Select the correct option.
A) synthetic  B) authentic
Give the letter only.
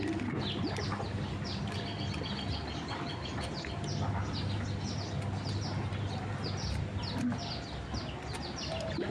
B